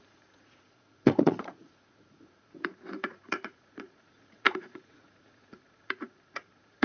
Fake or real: fake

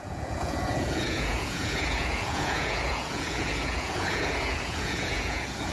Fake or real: fake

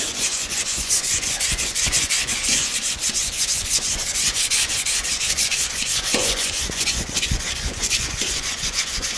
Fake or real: fake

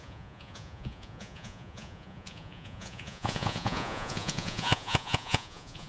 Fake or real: fake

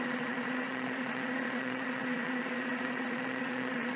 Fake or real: fake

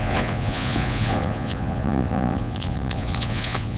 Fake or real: fake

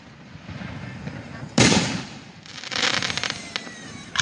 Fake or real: real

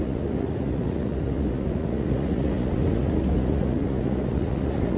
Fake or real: fake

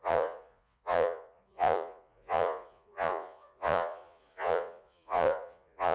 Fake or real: fake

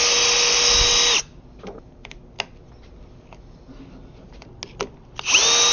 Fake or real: real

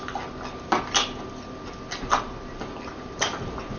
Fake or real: real